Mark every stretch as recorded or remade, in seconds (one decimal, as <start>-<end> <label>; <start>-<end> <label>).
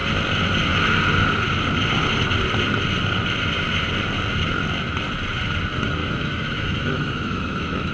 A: 0.0-6.0 recorded; 6.0-7.9 remade